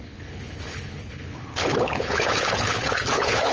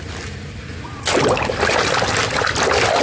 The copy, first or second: first